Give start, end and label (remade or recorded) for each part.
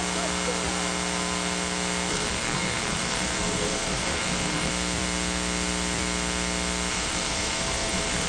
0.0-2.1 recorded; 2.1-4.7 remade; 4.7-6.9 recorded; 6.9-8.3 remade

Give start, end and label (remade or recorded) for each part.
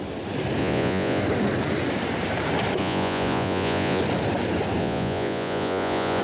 0.0-0.6 recorded; 0.6-1.2 remade; 1.2-2.8 recorded; 2.8-4.0 remade; 4.0-4.8 recorded; 4.8-6.2 remade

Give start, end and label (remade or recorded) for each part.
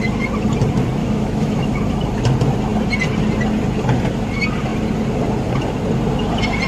0.0-1.0 recorded; 1.0-1.7 remade; 1.7-6.7 recorded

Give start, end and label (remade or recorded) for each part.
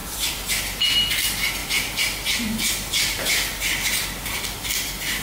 0.0-1.1 remade; 1.1-1.6 recorded; 1.6-4.7 remade; 4.7-5.2 recorded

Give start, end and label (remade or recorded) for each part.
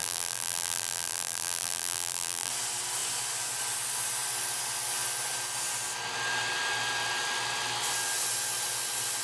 0.0-2.5 remade; 2.5-9.2 recorded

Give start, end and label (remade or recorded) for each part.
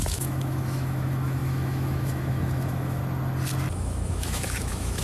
0.0-3.0 remade; 3.0-3.7 recorded; 3.7-5.0 remade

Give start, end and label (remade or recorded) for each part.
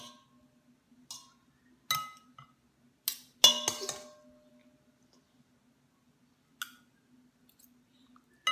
0.0-8.5 recorded